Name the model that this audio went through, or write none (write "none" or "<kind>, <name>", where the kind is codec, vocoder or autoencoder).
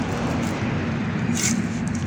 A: none